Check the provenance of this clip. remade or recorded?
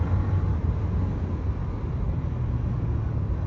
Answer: recorded